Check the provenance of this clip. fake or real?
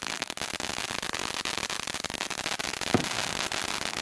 real